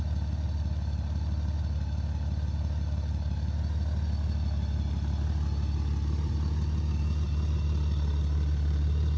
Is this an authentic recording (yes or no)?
yes